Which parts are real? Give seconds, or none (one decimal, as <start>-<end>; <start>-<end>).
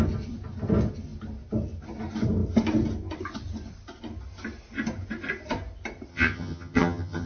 0.0-6.1